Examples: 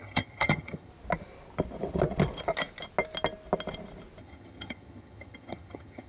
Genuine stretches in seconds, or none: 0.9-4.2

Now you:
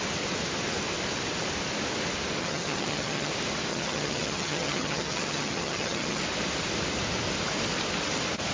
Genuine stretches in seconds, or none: 0.0-2.4; 3.3-3.7; 6.2-8.5

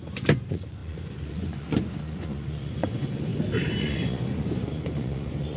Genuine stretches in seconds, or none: 3.3-3.8

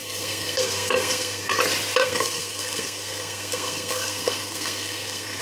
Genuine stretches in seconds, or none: 1.6-2.0

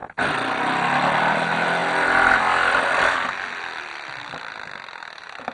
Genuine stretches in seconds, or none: 0.0-5.5

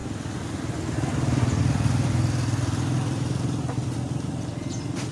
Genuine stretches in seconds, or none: 0.0-5.1

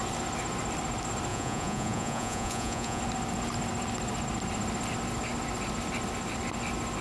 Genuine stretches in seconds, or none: 0.0-1.3; 3.0-7.0